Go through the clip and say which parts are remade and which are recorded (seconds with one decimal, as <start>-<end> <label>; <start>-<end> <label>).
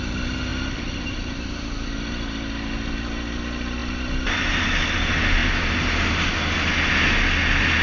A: 0.0-3.8 recorded; 3.8-4.5 remade; 4.5-7.8 recorded